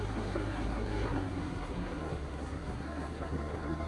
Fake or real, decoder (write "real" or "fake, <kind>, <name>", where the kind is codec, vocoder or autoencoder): fake, codec, SNAC